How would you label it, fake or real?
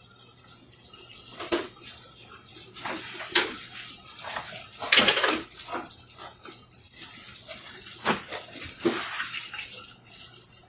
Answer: real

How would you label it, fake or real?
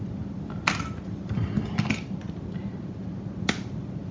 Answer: real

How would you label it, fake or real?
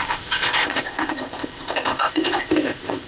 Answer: fake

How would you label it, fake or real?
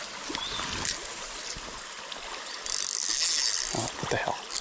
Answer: real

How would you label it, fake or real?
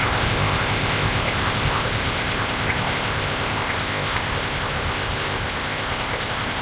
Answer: fake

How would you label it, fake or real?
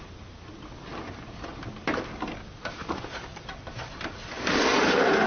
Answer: real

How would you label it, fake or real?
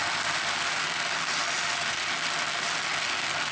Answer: real